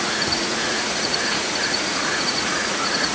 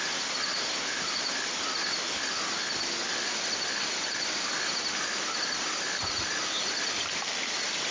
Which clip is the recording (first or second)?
second